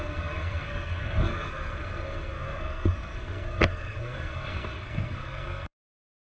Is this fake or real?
fake